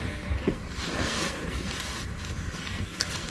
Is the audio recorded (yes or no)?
no